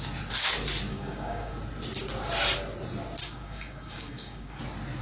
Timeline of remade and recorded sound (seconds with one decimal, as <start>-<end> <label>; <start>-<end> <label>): 0.0-0.9 recorded; 0.9-1.5 remade; 1.5-3.2 recorded; 3.2-4.6 remade; 4.6-5.0 recorded